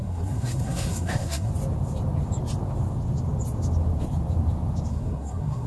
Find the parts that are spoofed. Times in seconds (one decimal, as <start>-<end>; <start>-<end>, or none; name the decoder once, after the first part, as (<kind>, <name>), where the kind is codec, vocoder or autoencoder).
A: 0.0-1.5 (codec, SNAC); 4.9-5.7